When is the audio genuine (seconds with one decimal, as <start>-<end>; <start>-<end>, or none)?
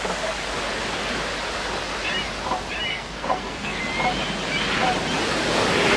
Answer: 0.0-2.9; 3.8-6.0